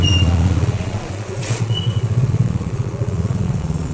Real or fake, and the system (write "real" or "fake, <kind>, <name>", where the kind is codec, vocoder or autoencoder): fake, vocoder, Vocos